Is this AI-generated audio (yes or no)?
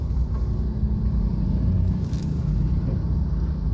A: no